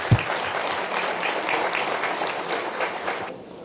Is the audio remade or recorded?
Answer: recorded